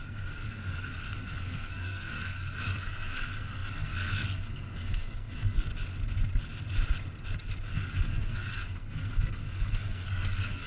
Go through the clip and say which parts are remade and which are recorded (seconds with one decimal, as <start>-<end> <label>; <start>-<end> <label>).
0.0-5.7 remade; 5.7-7.7 recorded; 7.7-10.7 remade